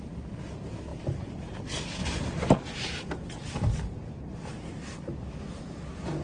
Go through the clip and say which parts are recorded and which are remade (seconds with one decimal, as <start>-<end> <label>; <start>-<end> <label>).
0.0-6.2 recorded